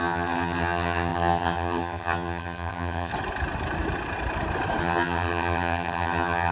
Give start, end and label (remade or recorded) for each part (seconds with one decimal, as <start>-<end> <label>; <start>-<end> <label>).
0.0-3.1 remade; 3.1-4.8 recorded; 4.8-6.5 remade